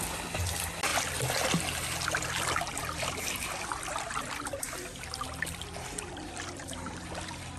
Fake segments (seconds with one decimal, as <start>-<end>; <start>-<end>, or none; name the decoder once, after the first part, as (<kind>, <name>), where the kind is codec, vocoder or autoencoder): none